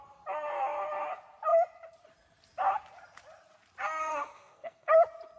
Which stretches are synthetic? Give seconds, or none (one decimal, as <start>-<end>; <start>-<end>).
4.0-4.9

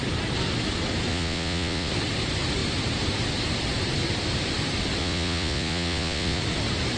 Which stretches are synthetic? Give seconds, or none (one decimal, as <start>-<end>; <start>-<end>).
1.1-1.9; 5.0-6.4